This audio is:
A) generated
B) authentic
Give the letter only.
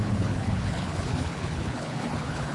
A